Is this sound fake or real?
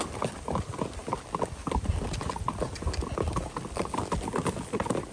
real